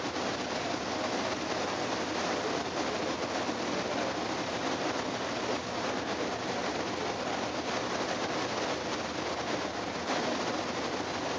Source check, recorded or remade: recorded